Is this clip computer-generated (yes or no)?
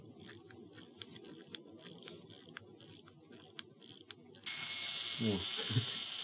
no